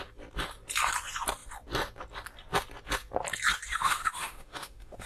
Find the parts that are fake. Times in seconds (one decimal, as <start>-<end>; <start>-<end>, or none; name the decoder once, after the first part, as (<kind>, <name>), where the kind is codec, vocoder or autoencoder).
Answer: 3.7-5.1 (autoencoder, DAC-VAE)